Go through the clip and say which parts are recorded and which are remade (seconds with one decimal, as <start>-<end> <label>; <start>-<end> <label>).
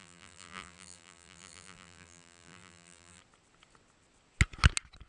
0.0-3.2 remade; 3.2-5.1 recorded